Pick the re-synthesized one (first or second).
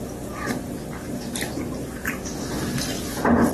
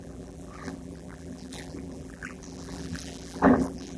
second